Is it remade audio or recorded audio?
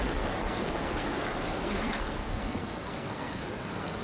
remade